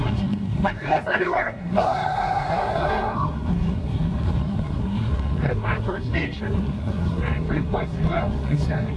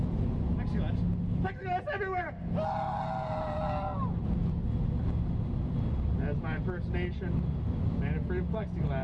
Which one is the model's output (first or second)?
first